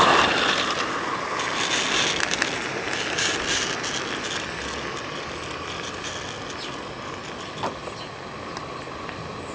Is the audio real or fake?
real